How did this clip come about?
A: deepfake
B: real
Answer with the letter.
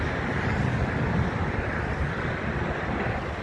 B